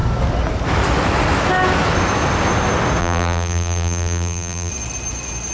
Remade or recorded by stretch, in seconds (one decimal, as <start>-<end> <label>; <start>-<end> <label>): 0.0-3.0 recorded; 3.0-4.7 remade; 4.7-5.5 recorded